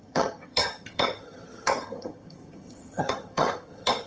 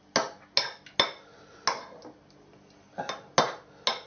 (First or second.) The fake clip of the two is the first